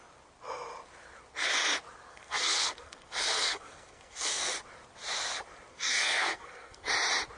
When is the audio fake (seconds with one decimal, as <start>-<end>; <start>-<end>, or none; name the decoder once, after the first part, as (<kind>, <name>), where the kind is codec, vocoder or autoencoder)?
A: 2.1-4.5 (codec, SNAC); 5.7-6.9